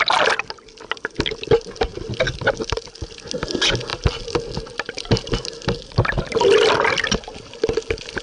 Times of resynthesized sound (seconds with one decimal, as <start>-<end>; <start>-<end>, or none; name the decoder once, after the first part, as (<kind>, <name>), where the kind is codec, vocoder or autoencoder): none